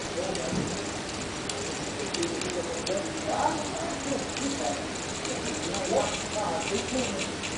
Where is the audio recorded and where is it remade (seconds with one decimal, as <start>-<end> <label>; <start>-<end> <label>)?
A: 0.0-7.6 recorded